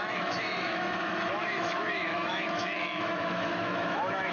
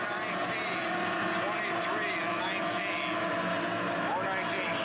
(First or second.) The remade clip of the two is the first